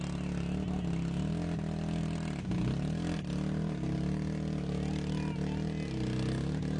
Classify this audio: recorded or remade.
recorded